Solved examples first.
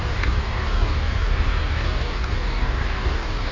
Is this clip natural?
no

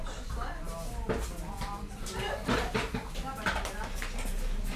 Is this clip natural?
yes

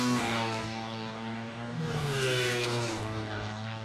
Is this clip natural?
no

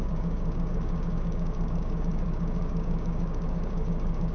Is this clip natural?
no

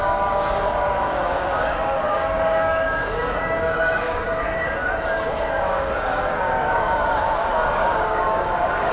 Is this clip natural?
no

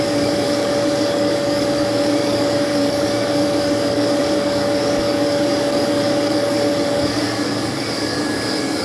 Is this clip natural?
no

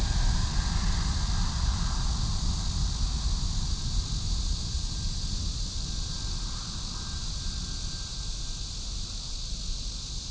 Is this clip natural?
yes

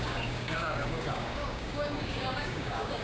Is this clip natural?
no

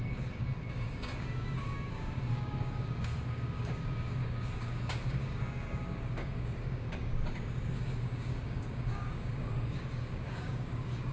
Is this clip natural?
no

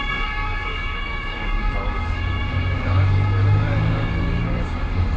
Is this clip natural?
no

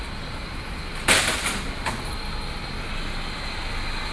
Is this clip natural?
yes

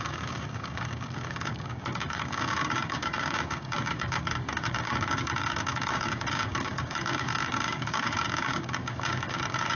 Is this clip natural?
no